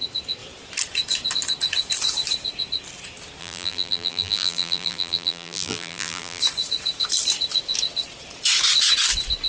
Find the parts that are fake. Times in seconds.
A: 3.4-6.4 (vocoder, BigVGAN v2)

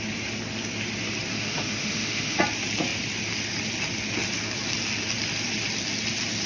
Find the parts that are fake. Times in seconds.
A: 1.3-2.4 (autoencoder, DAC-VAE)

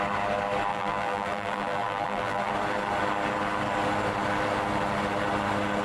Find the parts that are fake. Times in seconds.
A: 0.7-2.5 (vocoder, BigVGAN v2)

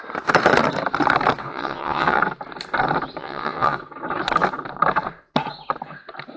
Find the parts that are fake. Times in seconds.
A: 1.4-2.2 (vocoder, WaveNeXt); 3.2-3.8